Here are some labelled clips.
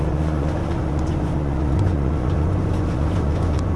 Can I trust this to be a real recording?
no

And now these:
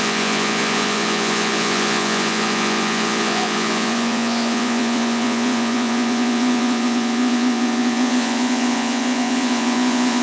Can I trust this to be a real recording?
no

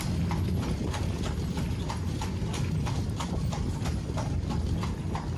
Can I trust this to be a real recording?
yes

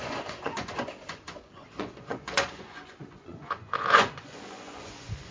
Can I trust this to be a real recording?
no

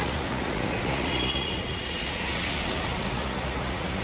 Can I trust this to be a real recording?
no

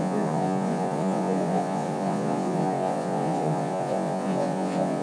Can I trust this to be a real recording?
no